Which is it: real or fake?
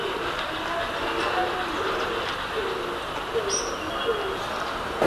real